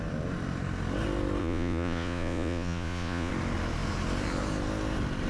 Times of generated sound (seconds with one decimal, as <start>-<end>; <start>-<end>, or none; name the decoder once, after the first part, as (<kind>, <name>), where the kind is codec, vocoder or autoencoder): 1.4-3.3 (vocoder, Vocos)